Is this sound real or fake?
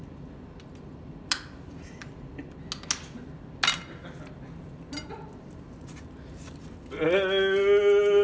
real